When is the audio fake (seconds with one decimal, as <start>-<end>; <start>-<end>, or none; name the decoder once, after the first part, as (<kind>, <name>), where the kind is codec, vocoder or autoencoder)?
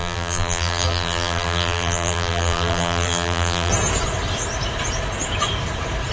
0.0-3.7 (vocoder, BigVGAN v2)